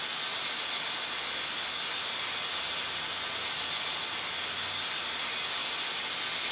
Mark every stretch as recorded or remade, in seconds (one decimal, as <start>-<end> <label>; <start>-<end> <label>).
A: 0.0-6.5 recorded